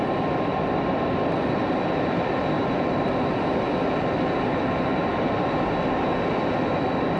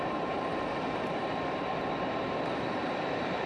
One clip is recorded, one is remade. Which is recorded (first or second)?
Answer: first